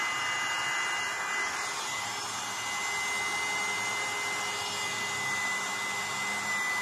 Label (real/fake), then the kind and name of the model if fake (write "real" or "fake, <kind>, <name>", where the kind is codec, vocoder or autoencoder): real